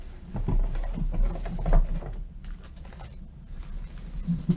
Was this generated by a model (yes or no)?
no